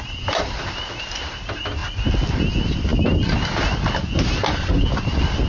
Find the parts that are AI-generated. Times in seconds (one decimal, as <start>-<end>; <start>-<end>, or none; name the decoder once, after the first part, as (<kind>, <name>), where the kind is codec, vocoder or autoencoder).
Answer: none